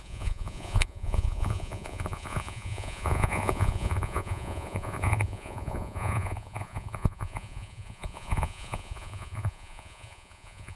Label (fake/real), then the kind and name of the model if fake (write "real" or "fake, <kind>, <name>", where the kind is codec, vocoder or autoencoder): fake, vocoder, Vocos